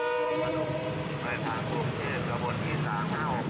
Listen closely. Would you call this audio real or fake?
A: fake